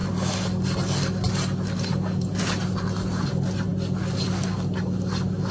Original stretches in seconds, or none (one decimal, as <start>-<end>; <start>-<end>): 0.0-5.5

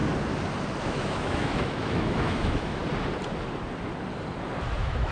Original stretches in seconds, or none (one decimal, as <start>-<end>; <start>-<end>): 0.0-0.8; 2.8-4.6

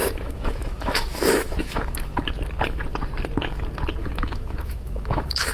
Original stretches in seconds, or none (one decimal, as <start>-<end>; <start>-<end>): 2.3-4.0

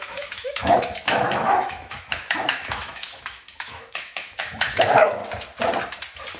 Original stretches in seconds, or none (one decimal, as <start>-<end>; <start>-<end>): 5.2-6.4